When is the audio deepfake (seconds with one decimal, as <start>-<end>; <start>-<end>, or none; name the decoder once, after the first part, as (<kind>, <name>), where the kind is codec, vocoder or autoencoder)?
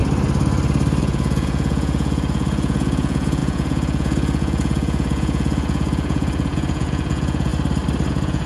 1.0-7.5 (vocoder, Vocos); 8.1-8.5